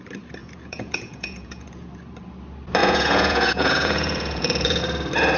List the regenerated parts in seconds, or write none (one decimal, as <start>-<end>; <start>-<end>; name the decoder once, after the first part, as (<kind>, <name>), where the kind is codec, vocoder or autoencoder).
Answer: 0.4-1.9 (vocoder, Vocos); 2.8-4.8